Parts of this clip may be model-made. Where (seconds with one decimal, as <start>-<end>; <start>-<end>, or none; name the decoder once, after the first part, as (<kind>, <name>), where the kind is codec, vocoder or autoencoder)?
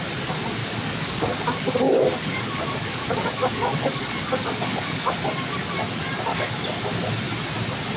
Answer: 0.6-5.1 (codec, DAC); 6.3-7.1